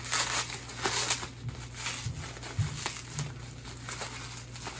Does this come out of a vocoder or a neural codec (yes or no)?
no